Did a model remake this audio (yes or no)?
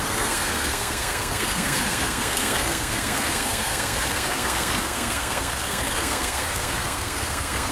yes